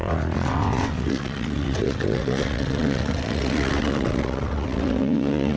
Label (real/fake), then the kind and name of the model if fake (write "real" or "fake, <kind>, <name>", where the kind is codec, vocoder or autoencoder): fake, vocoder, WaveNeXt